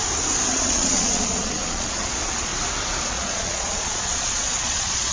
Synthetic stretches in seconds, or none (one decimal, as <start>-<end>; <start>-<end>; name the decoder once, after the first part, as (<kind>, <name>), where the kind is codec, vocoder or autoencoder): 0.5-2.5 (vocoder, Vocos); 3.1-5.1